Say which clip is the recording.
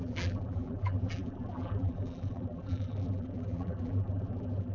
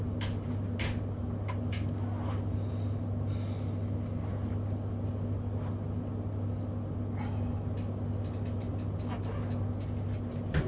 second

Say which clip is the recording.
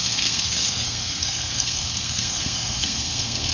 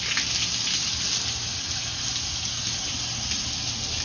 second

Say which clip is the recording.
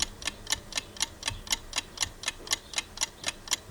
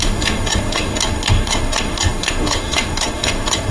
first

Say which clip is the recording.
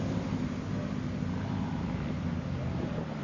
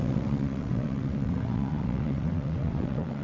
first